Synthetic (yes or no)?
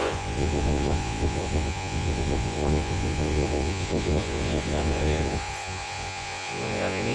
yes